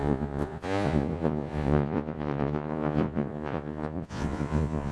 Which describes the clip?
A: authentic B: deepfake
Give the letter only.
B